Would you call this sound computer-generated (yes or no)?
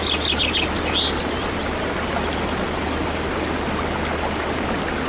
no